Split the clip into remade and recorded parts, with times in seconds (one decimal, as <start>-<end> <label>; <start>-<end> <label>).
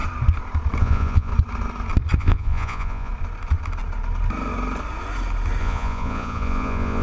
0.0-0.8 recorded; 0.8-1.3 remade; 1.3-2.2 recorded; 2.2-3.1 remade; 3.1-5.6 recorded; 5.6-7.0 remade